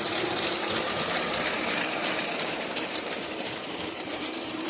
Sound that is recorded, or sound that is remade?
remade